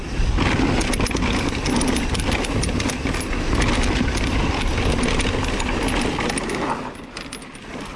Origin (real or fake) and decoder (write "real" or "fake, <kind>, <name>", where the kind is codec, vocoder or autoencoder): real